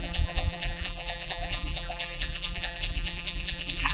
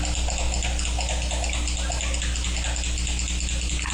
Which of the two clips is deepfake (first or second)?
first